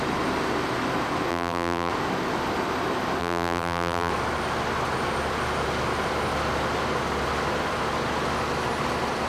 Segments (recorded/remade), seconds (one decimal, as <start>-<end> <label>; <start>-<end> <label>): 0.0-1.3 recorded; 1.3-1.9 remade; 1.9-3.2 recorded; 3.2-4.1 remade; 4.1-9.3 recorded